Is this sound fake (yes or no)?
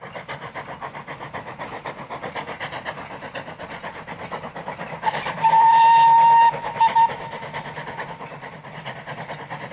no